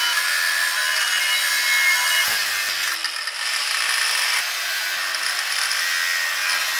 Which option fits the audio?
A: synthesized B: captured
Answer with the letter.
B